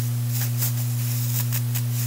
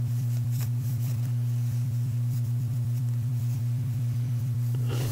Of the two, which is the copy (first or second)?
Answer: second